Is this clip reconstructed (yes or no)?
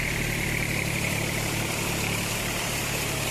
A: yes